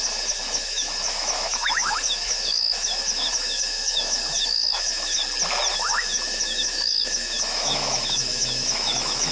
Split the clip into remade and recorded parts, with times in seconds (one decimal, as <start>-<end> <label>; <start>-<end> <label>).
0.0-5.2 remade; 5.2-5.7 recorded; 5.7-9.3 remade